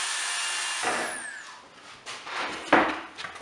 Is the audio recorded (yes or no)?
yes